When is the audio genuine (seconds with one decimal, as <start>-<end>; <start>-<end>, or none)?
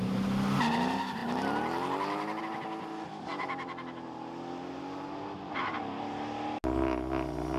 0.0-7.6